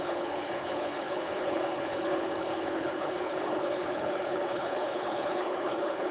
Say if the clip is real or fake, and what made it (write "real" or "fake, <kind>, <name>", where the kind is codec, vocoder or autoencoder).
fake, codec, HILCodec